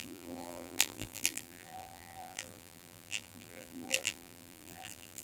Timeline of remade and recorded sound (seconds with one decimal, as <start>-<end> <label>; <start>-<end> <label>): 0.0-5.2 remade